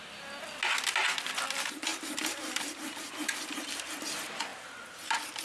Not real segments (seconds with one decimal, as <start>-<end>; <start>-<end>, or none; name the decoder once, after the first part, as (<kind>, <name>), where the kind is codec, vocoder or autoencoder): 1.9-4.0 (vocoder, BigVGAN v2)